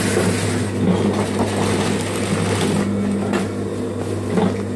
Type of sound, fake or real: real